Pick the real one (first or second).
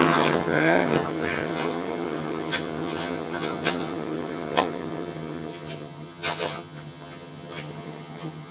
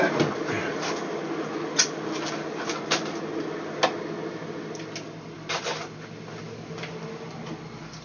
second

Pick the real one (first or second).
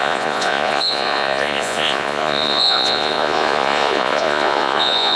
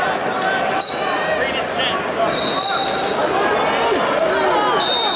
second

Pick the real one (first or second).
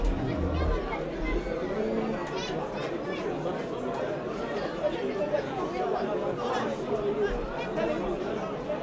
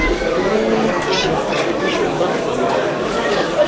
first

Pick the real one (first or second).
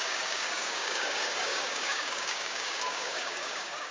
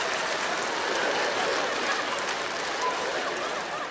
second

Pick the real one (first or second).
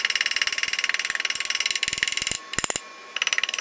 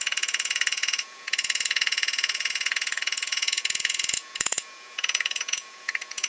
first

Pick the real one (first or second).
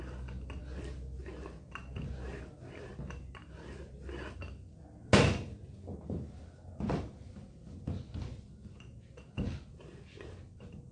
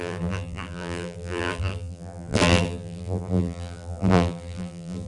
first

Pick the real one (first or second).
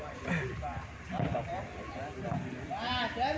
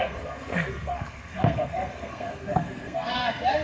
first